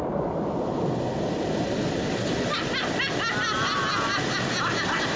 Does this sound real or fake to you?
real